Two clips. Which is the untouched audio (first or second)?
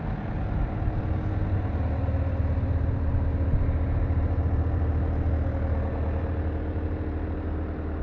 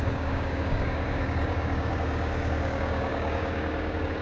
first